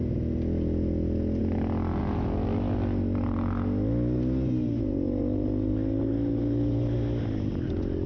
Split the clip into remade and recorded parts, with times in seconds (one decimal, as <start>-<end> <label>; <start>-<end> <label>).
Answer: 0.0-8.1 recorded